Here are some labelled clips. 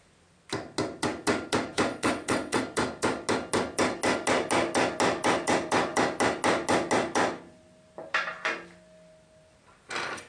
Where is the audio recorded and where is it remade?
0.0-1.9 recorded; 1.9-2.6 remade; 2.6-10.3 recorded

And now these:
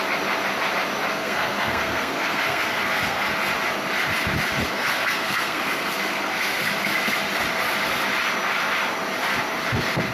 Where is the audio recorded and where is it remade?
0.0-1.1 recorded; 1.1-3.3 remade; 3.3-4.7 recorded; 4.7-6.6 remade; 6.6-10.1 recorded

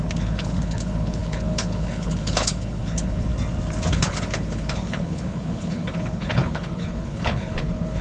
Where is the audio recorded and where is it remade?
0.0-3.3 remade; 3.3-3.9 recorded; 3.9-8.0 remade

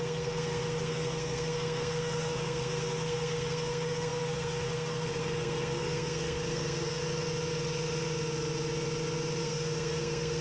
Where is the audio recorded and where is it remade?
0.0-7.0 remade; 7.0-9.4 recorded; 9.4-10.4 remade

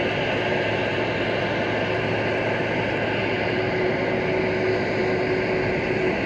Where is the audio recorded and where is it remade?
0.0-0.8 recorded; 0.8-1.4 remade; 1.4-3.2 recorded; 3.2-4.0 remade; 4.0-6.3 recorded

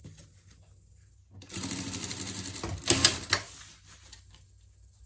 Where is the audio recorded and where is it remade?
0.0-5.1 recorded

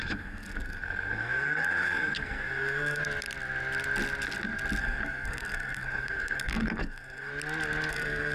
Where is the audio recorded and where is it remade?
0.0-3.0 remade; 3.0-4.8 recorded; 4.8-7.3 remade; 7.3-7.9 recorded; 7.9-8.3 remade